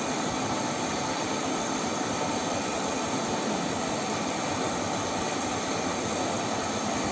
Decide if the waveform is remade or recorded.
recorded